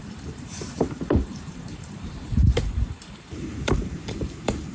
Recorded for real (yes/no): no